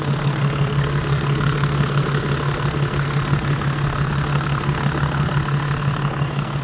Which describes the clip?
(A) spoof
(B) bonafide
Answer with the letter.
A